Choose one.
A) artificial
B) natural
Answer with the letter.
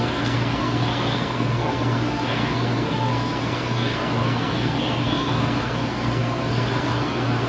A